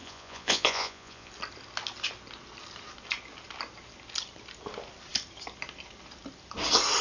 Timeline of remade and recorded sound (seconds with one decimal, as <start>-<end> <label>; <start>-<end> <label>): 0.0-1.3 remade; 1.3-7.0 recorded